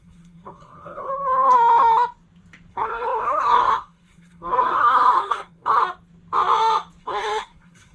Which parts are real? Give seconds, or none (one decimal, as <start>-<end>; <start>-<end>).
1.1-2.7; 5.8-7.0